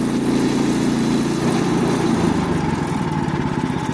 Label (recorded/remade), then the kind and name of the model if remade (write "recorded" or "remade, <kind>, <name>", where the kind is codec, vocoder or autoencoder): recorded